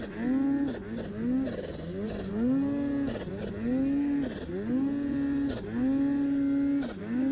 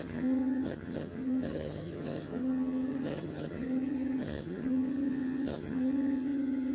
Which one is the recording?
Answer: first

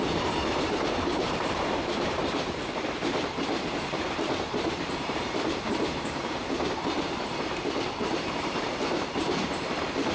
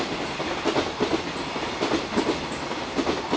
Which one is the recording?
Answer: second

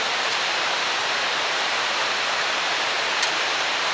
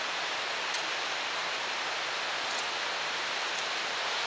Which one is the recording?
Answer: second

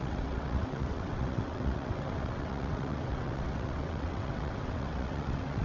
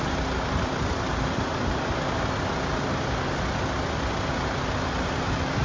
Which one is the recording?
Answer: second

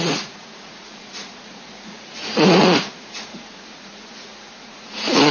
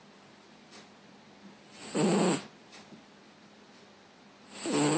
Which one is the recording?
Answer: second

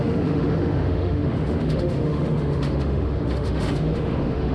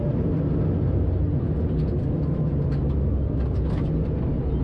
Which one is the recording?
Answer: second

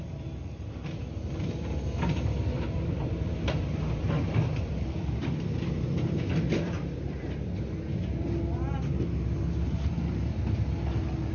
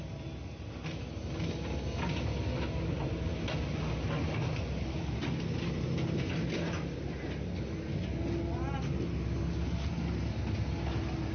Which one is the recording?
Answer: second